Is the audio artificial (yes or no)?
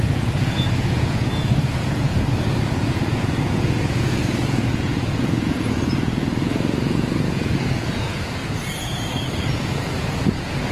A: yes